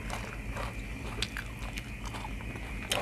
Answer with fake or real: real